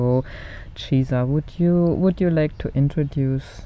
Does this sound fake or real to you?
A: real